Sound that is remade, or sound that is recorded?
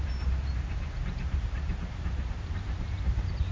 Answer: remade